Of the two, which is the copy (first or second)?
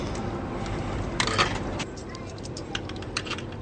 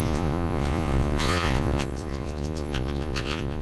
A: second